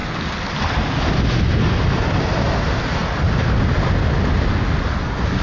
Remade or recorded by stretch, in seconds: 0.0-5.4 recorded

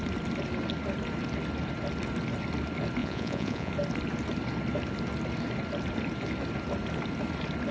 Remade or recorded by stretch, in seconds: 0.0-3.0 recorded; 3.0-3.7 remade; 3.7-7.7 recorded

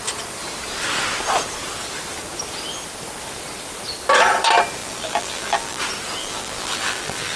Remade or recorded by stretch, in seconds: 0.0-4.8 recorded; 4.8-5.8 remade; 5.8-6.2 recorded; 6.2-7.4 remade

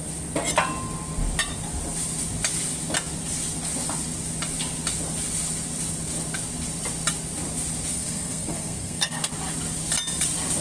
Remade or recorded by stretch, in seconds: 0.0-7.9 recorded; 7.9-9.3 remade; 9.3-10.6 recorded

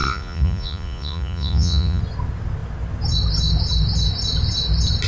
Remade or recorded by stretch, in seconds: 0.0-2.0 remade; 2.0-5.1 recorded

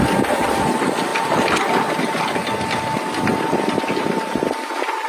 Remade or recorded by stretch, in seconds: 0.0-1.1 recorded; 1.1-1.7 remade; 1.7-3.3 recorded; 3.3-4.3 remade; 4.3-5.1 recorded

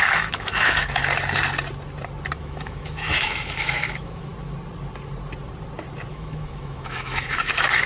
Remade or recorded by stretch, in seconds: 0.0-1.0 remade; 1.0-2.4 recorded; 2.4-4.3 remade; 4.3-6.1 recorded; 6.1-7.9 remade